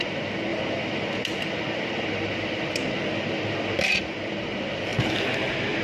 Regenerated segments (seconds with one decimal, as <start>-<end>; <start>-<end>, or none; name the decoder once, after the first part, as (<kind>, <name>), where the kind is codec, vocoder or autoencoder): none

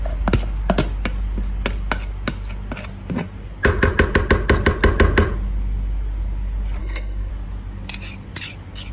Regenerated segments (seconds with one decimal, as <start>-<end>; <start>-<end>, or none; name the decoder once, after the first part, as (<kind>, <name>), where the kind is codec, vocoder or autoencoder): 6.8-7.3 (codec, SNAC)

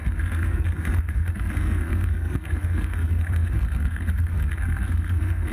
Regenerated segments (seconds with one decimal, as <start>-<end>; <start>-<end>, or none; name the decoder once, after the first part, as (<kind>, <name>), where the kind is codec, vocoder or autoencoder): 0.0-5.5 (codec, SNAC)

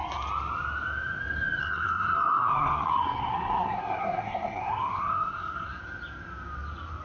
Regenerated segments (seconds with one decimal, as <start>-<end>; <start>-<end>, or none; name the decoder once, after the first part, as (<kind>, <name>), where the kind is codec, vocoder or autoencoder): 1.6-5.8 (codec, SNAC)

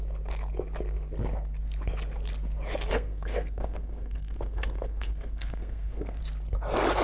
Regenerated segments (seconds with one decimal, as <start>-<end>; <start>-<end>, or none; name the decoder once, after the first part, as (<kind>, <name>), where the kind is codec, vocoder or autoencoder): 2.9-6.2 (codec, SNAC)

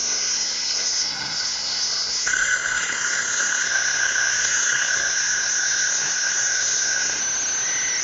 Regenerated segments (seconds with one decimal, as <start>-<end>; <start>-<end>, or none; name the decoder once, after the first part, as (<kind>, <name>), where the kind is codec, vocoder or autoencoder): 0.0-7.2 (codec, SNAC)

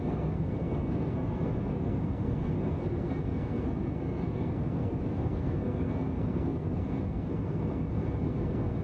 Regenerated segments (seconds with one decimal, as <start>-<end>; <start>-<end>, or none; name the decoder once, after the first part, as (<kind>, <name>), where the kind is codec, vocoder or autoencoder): 0.0-8.8 (codec, SNAC)

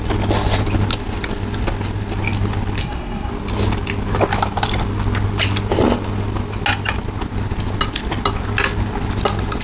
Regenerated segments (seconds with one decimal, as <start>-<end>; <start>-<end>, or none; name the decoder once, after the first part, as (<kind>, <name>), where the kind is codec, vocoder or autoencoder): 2.8-3.3 (codec, SNAC)